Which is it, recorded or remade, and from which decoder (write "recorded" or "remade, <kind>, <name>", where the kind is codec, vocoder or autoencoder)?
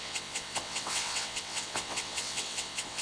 remade, vocoder, WaveNeXt